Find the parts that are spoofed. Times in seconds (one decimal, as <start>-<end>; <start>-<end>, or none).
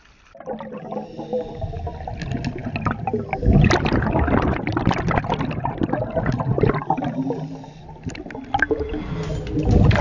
none